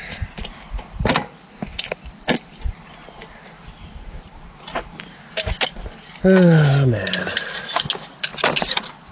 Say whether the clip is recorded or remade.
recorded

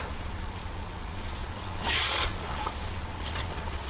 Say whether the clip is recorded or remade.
remade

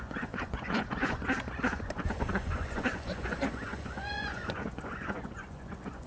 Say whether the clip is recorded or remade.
remade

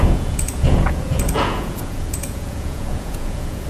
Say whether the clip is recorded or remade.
remade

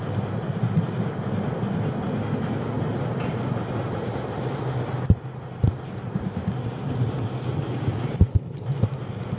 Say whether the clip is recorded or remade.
recorded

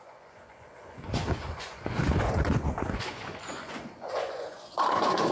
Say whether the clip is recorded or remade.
remade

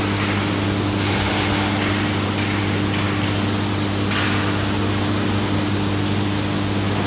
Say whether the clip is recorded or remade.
recorded